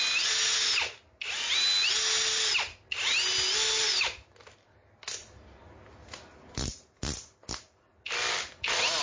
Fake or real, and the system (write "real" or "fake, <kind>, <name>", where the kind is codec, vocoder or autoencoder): real